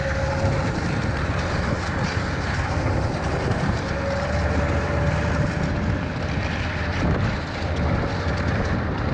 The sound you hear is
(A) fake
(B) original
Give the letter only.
B